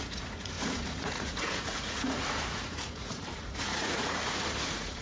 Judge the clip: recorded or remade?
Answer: remade